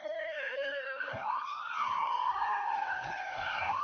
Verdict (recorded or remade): remade